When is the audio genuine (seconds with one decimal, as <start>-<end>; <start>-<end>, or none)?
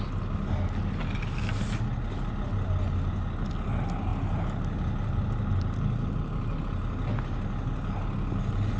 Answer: 0.0-8.8